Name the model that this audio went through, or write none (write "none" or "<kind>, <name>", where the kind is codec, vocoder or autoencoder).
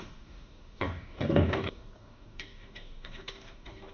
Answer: codec, DAC